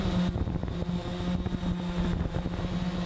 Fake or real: real